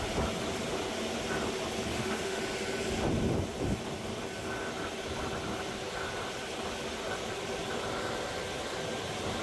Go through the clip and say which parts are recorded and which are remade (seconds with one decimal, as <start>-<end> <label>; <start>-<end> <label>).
0.0-1.9 recorded; 1.9-2.4 remade; 2.4-9.4 recorded

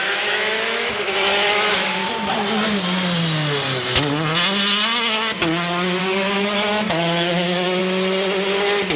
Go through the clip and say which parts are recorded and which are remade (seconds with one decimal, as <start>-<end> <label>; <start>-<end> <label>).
0.0-2.0 remade; 2.0-6.0 recorded; 6.0-7.8 remade; 7.8-9.0 recorded

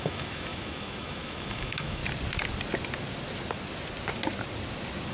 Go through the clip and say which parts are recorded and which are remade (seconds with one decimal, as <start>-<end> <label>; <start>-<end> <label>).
0.0-2.0 remade; 2.0-5.1 recorded

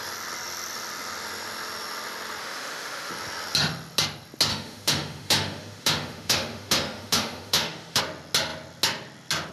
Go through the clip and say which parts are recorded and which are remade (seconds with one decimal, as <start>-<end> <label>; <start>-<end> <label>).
0.0-2.4 recorded; 2.4-3.1 remade; 3.1-4.5 recorded; 4.5-8.0 remade; 8.0-9.5 recorded

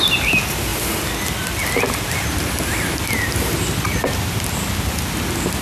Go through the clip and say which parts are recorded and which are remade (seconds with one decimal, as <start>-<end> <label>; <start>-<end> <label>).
0.0-5.6 recorded

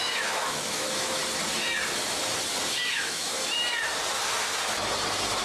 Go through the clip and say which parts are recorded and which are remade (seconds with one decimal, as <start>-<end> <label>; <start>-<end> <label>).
0.0-1.2 remade; 1.2-2.9 recorded; 2.9-3.3 remade; 3.3-5.4 recorded

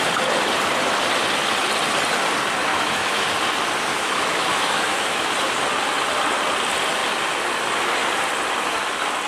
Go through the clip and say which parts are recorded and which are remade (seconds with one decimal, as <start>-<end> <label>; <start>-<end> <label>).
0.0-2.7 recorded; 2.7-3.3 remade; 3.3-3.9 recorded; 3.9-5.3 remade; 5.3-9.3 recorded

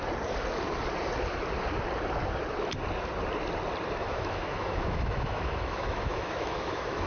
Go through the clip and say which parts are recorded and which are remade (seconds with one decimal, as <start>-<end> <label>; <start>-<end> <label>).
0.0-4.0 recorded; 4.0-7.1 remade